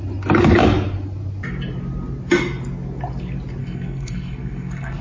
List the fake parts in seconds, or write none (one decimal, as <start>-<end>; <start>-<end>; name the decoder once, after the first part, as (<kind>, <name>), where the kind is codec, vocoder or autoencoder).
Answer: 3.6-5.0 (codec, SNAC)